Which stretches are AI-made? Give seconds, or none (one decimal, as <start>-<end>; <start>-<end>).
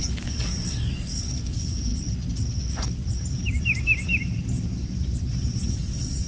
0.0-1.9; 5.7-6.3